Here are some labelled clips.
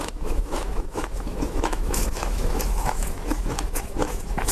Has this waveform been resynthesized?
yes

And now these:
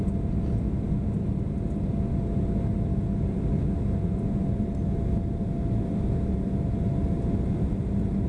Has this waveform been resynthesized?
no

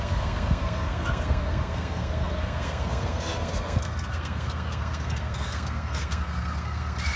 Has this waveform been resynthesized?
yes